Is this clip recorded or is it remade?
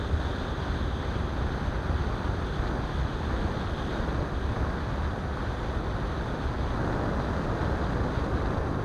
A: recorded